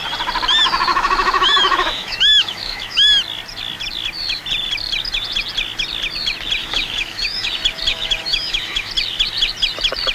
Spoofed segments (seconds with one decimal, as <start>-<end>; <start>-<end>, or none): 0.9-3.1; 6.6-7.5; 7.9-8.9